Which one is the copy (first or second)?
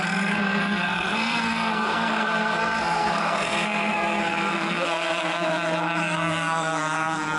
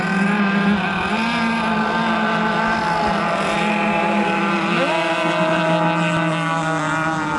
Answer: first